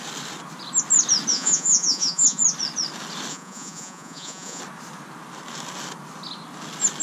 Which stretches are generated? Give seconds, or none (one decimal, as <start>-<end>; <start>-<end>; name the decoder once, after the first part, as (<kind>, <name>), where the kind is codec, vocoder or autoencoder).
1.3-2.4 (vocoder, Vocos); 3.3-4.6